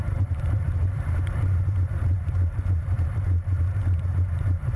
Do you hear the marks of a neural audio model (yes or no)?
yes